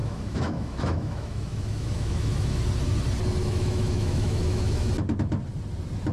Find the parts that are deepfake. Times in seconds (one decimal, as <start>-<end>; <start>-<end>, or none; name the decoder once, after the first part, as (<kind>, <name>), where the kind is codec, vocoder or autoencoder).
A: 0.0-2.6 (autoencoder, DAC-VAE); 3.4-4.9